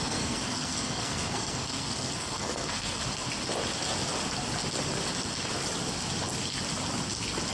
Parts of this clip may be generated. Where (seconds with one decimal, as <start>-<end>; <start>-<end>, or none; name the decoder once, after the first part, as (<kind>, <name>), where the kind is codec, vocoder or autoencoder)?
0.0-3.0 (codec, SNAC)